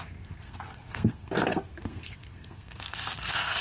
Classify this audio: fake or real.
fake